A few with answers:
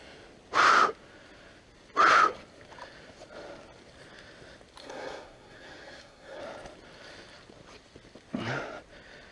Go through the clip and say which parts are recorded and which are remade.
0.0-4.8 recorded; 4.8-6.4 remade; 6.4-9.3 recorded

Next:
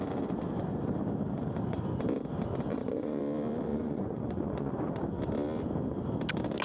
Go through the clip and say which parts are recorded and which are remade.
0.0-2.7 recorded; 2.7-3.2 remade; 3.2-3.7 recorded; 3.7-4.9 remade; 4.9-6.6 recorded

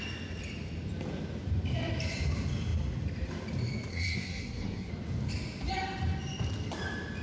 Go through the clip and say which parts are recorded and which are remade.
0.0-3.9 recorded; 3.9-4.9 remade; 4.9-7.2 recorded